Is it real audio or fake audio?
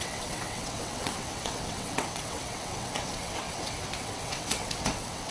fake